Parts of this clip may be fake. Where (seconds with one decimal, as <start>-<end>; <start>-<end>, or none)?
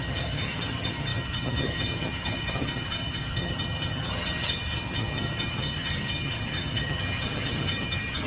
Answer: 0.0-8.3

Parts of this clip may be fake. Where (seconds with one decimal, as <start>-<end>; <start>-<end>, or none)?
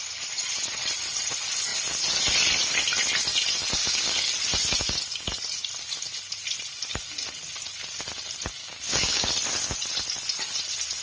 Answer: 3.8-4.3; 8.6-9.3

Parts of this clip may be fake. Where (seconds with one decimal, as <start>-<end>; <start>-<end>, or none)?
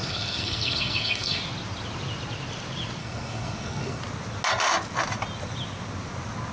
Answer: 0.0-1.4; 3.0-4.0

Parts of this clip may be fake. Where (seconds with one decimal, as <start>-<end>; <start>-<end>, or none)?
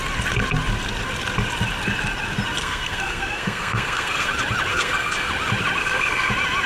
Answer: 2.6-4.3; 4.7-5.3; 5.8-6.3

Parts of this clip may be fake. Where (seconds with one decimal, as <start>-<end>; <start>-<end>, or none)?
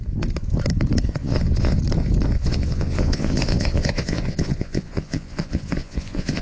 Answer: 1.2-1.8; 2.4-6.4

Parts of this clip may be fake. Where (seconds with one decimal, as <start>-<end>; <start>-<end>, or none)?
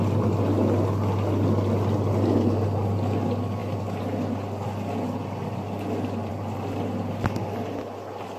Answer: none